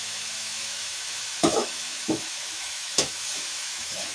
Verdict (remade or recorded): remade